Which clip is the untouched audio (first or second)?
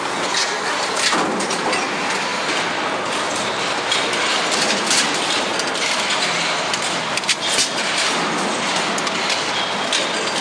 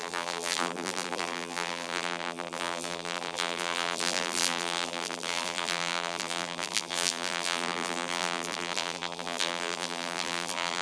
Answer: first